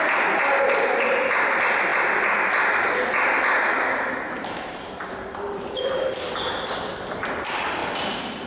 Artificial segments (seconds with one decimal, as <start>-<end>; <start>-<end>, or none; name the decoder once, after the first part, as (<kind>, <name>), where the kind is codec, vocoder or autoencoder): none